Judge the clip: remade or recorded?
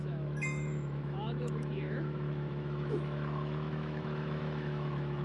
remade